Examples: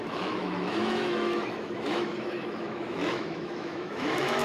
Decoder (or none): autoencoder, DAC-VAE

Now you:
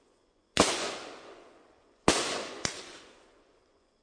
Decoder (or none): vocoder, Vocos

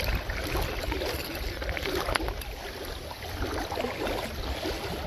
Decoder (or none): none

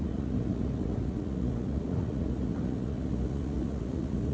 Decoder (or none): vocoder, Vocos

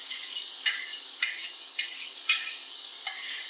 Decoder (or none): codec, DAC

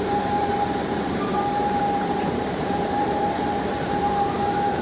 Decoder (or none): vocoder, BigVGAN v2